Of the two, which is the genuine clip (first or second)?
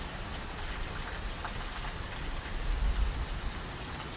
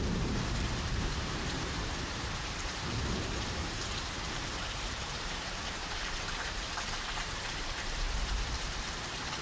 first